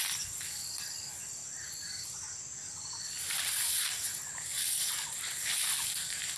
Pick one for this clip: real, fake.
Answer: real